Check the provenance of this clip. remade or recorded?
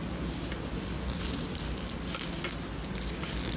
recorded